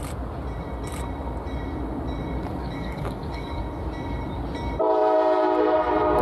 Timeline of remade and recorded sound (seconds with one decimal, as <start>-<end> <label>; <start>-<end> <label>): 0.0-2.6 recorded; 2.6-3.6 remade; 3.6-6.2 recorded